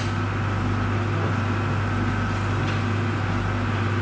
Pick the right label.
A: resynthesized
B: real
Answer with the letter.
B